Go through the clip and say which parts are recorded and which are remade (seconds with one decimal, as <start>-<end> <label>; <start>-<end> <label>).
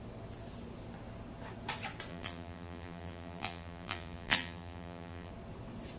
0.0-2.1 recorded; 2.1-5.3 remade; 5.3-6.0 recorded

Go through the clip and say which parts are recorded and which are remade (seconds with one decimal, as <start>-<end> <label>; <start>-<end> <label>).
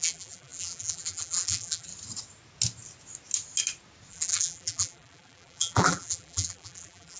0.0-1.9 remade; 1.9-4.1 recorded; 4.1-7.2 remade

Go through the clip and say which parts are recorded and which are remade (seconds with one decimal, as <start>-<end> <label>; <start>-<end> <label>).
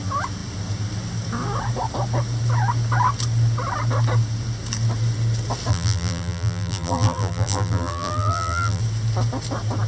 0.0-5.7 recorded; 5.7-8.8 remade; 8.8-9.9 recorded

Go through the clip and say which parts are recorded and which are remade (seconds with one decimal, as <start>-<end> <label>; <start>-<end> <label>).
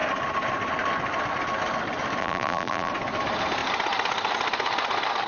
0.0-2.2 recorded; 2.2-2.9 remade; 2.9-5.3 recorded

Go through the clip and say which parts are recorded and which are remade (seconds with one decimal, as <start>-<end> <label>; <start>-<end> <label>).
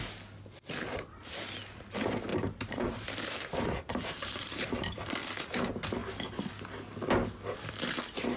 0.0-2.3 recorded; 2.3-5.1 remade; 5.1-8.4 recorded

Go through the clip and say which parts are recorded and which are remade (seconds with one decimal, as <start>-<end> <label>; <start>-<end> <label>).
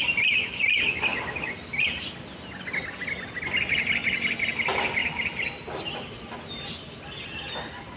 0.0-5.0 recorded; 5.0-6.2 remade; 6.2-8.0 recorded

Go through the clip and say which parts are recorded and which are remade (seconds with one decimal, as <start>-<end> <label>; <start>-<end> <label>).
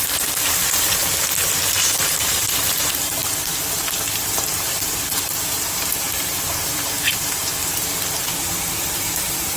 0.0-1.0 remade; 1.0-2.1 recorded; 2.1-3.2 remade; 3.2-4.2 recorded; 4.2-7.5 remade; 7.5-8.9 recorded; 8.9-9.6 remade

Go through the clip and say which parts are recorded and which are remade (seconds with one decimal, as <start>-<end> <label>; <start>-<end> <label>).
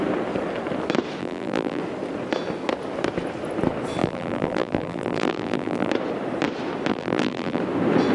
0.0-1.2 recorded; 1.2-1.8 remade; 1.8-4.0 recorded; 4.0-5.9 remade; 5.9-6.9 recorded; 6.9-7.6 remade; 7.6-8.1 recorded